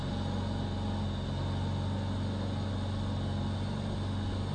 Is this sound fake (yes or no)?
no